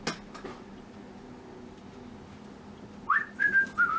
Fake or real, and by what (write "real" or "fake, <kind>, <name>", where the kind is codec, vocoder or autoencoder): real